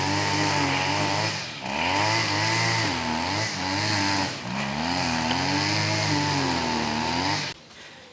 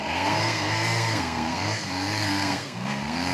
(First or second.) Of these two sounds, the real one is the first